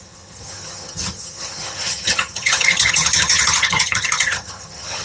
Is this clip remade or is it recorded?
remade